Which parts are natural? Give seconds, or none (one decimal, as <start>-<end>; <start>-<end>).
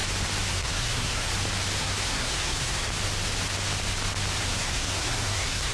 0.0-0.5; 1.3-1.8; 2.9-4.4